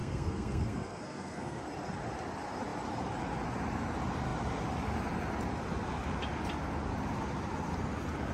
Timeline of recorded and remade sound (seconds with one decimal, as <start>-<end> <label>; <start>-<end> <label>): 0.0-1.6 remade; 1.6-8.3 recorded